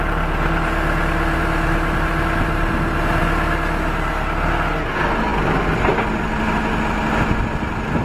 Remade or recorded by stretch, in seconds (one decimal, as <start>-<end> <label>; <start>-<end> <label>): 0.0-8.0 recorded